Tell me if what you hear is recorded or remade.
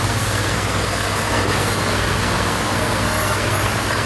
remade